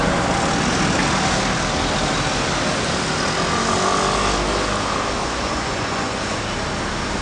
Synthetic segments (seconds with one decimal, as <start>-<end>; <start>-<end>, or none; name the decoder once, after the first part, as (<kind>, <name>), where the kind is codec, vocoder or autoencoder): 5.2-6.4 (vocoder, Vocos)